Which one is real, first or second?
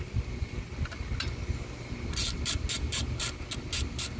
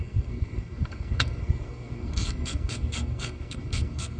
first